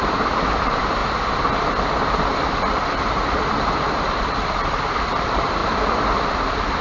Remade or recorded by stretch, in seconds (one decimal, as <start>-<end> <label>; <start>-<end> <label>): 0.0-1.0 remade; 1.0-5.1 recorded; 5.1-5.6 remade; 5.6-6.8 recorded